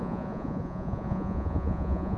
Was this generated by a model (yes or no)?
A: yes